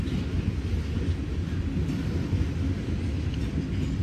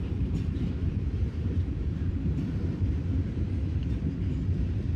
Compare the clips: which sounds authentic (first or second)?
first